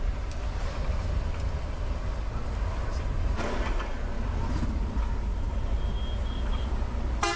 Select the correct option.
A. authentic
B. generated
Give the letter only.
A